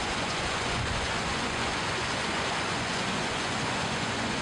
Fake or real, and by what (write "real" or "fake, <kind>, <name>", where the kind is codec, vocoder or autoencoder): fake, vocoder, Vocos